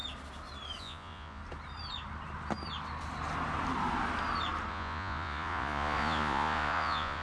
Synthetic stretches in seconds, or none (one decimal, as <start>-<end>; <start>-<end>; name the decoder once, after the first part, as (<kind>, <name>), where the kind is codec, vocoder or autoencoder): 0.8-1.4 (vocoder, Vocos); 4.7-7.2